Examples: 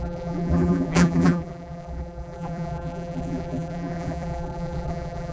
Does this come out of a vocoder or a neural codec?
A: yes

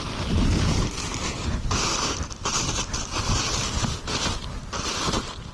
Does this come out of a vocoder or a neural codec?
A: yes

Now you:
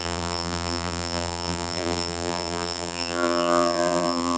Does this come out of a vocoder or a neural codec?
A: yes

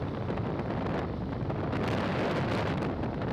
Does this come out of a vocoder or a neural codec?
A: no